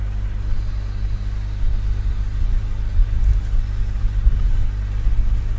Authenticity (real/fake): real